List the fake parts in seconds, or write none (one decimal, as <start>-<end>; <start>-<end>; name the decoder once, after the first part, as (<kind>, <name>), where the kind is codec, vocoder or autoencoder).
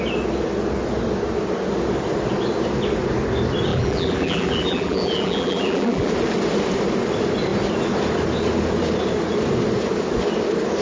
3.7-6.1 (vocoder, BigVGAN v2)